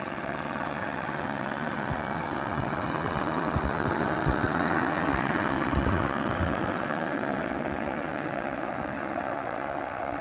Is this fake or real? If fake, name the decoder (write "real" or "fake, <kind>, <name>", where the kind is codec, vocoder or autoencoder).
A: fake, vocoder, WaveNeXt